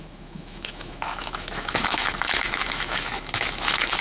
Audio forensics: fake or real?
fake